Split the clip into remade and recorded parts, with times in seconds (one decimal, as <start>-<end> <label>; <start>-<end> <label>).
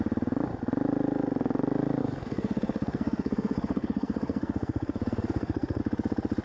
0.0-2.0 recorded; 2.0-5.8 remade; 5.8-6.4 recorded